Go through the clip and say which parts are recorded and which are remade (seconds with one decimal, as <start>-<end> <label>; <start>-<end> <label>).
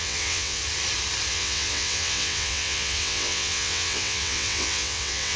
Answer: 0.0-0.6 remade; 0.6-1.3 recorded; 1.3-5.4 remade